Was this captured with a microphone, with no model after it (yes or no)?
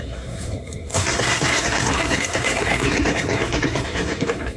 no